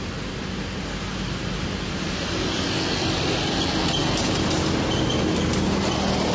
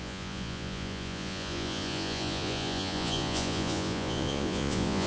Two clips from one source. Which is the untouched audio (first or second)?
first